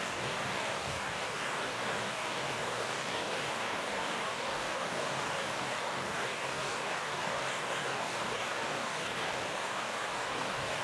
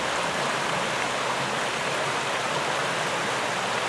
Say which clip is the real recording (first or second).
second